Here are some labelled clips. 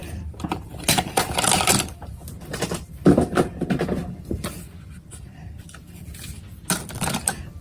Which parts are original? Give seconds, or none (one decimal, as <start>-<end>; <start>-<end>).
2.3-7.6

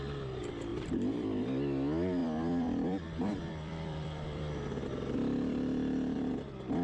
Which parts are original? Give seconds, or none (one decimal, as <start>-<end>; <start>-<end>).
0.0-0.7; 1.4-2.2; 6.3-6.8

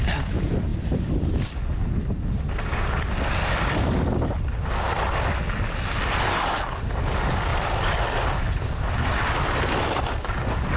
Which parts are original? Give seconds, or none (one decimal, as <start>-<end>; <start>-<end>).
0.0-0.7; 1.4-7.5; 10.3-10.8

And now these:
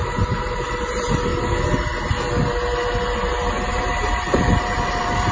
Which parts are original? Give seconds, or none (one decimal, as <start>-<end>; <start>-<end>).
1.3-3.7